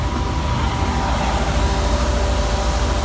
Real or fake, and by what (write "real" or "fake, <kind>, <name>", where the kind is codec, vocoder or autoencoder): real